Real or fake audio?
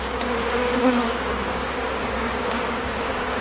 fake